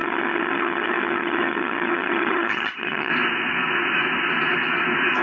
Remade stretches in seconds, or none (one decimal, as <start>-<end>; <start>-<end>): 0.0-3.1